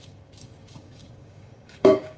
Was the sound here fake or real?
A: fake